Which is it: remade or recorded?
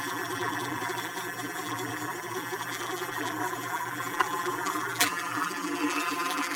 remade